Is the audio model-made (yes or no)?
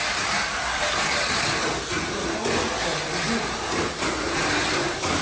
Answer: no